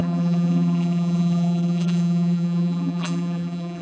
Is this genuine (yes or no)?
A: no